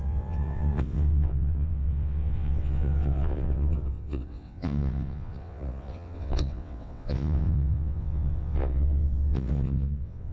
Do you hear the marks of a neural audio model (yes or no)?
yes